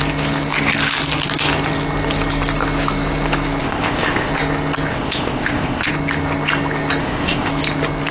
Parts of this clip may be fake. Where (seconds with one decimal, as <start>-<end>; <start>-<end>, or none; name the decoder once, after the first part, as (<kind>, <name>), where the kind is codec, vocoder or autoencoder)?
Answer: 3.6-4.3 (codec, ZipCodec); 4.9-5.9; 7.0-7.5